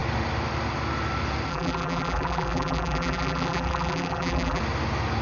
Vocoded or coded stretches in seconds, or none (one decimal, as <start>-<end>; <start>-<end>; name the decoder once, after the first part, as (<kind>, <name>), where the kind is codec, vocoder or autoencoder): 1.5-4.6 (vocoder, BigVGAN v2)